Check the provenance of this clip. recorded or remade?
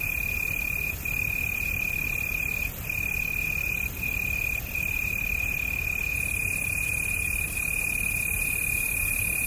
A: recorded